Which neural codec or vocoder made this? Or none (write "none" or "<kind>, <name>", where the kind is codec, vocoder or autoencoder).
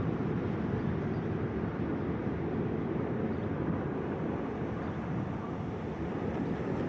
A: none